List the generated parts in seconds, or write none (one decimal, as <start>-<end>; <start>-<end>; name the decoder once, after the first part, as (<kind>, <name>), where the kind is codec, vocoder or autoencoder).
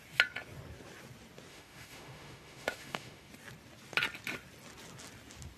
1.5-3.3 (autoencoder, DAC-VAE)